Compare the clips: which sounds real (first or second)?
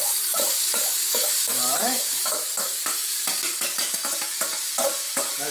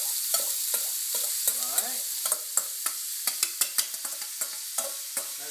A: second